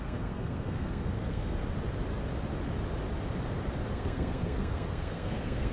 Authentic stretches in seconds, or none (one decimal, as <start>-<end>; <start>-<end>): 1.6-3.9